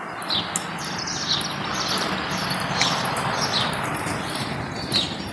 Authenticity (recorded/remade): recorded